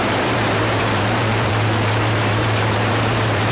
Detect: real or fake fake